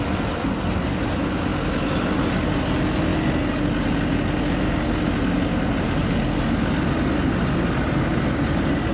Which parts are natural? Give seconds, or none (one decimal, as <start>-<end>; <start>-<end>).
0.0-8.9